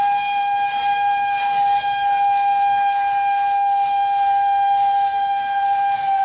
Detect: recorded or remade remade